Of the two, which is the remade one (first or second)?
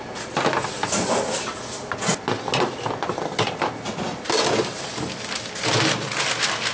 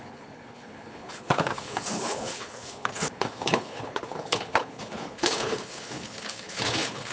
second